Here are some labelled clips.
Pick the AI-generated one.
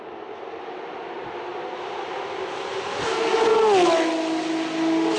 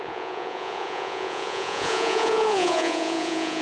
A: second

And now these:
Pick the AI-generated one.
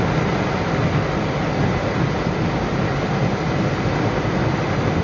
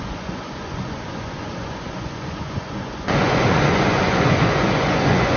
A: second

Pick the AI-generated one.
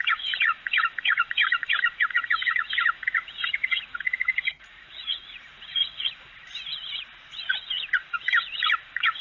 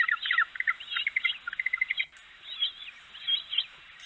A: first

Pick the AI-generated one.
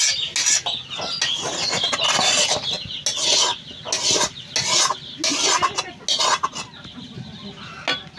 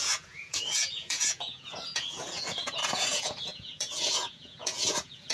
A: second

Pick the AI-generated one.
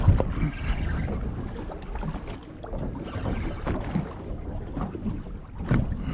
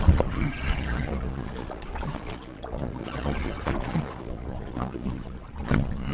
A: second